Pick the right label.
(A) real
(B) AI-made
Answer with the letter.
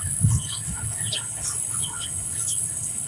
B